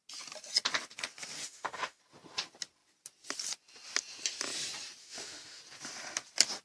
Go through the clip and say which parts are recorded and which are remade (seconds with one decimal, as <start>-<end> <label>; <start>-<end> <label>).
0.0-1.4 recorded; 1.4-2.0 remade; 2.0-5.0 recorded; 5.0-5.6 remade; 5.6-6.6 recorded